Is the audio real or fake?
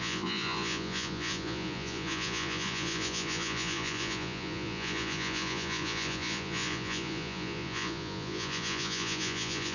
fake